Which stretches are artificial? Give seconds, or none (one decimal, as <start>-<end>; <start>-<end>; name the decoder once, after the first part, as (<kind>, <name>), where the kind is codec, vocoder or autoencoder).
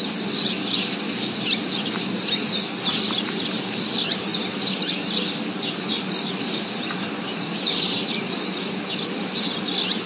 none